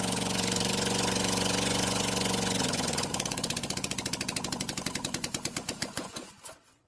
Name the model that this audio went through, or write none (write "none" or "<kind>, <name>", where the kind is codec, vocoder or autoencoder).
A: vocoder, Vocos